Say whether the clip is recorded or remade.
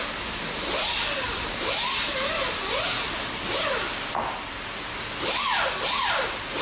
recorded